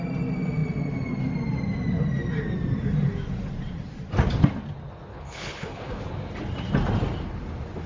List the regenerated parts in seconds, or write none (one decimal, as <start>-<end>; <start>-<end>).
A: 5.1-6.0